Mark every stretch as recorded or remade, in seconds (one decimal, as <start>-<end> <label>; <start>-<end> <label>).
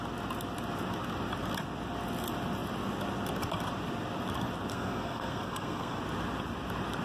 0.0-4.7 recorded; 4.7-6.0 remade; 6.0-7.0 recorded